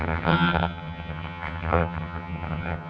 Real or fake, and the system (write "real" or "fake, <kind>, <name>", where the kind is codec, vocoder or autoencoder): fake, vocoder, HiFi-GAN